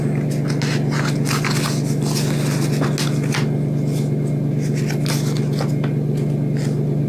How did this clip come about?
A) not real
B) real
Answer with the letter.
B